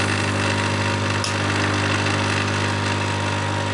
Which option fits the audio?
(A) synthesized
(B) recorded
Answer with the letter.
B